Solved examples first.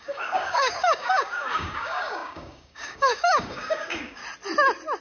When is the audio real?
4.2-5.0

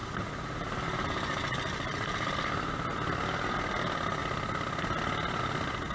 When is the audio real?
0.0-5.9

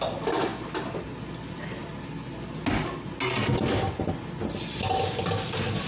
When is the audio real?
0.0-5.9

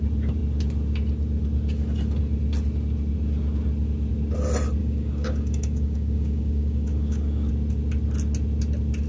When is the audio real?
0.0-4.8; 7.5-9.1

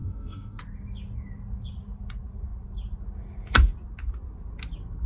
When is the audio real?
0.6-5.1